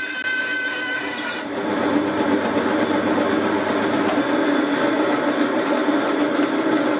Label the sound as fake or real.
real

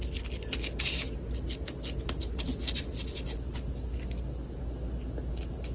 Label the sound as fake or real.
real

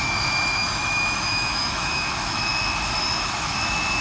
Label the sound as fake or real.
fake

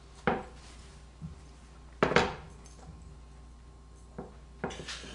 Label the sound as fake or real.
real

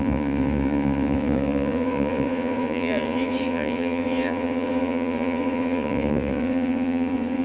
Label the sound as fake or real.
fake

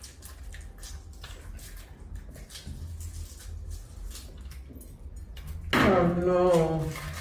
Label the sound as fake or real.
real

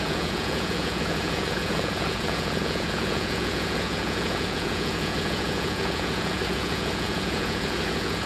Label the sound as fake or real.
fake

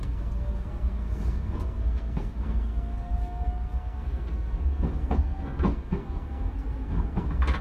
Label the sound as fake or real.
fake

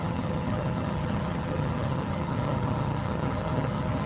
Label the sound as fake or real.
fake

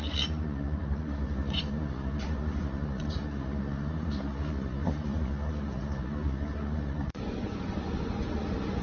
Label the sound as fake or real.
fake